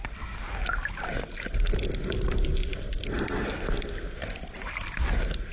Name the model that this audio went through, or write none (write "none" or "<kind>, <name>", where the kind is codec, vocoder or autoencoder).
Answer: none